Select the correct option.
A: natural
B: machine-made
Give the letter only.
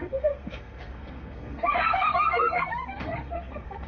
B